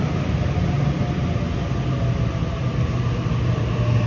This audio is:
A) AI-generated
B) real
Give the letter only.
B